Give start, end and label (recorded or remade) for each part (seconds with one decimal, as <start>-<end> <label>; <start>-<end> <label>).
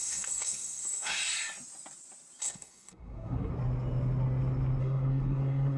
0.0-1.2 remade; 1.2-2.4 recorded; 2.4-3.5 remade; 3.5-4.8 recorded; 4.8-5.8 remade